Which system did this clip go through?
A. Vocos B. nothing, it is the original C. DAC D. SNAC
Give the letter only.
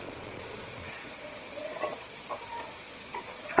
A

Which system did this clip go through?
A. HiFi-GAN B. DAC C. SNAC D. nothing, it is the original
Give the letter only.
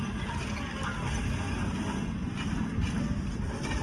D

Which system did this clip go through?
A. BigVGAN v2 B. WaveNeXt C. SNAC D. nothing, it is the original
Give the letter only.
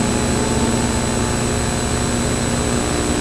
D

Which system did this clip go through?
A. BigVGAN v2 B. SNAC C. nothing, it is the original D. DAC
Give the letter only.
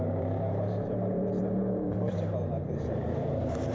A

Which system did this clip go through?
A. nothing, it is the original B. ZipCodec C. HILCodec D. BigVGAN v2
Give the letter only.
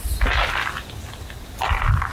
A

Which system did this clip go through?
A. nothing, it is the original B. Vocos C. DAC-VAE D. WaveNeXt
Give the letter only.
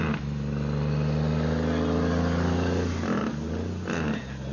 A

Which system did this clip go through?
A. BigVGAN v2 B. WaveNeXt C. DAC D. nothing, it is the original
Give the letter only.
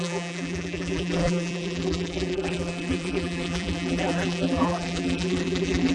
A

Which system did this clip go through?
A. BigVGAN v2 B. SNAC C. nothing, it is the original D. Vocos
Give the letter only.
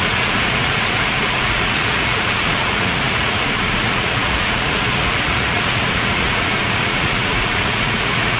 D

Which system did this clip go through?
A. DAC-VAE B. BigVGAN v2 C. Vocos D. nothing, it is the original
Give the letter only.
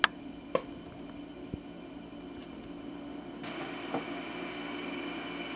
D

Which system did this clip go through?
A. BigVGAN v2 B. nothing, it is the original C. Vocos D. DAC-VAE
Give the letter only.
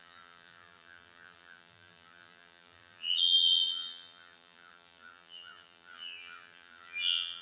A